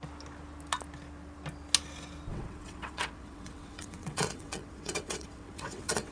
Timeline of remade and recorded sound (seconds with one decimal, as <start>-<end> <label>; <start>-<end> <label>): 0.0-2.3 recorded; 2.3-6.1 remade